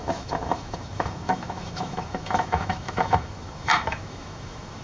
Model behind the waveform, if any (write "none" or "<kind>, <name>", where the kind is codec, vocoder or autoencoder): autoencoder, DAC-VAE